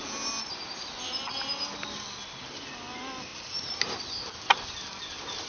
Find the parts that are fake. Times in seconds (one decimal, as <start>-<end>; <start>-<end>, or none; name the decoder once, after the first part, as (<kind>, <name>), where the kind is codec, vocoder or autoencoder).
none